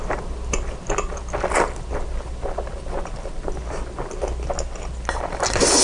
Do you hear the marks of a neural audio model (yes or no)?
no